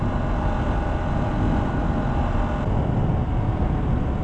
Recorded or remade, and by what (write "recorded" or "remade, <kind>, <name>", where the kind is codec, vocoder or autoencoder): recorded